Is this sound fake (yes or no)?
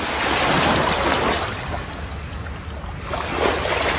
no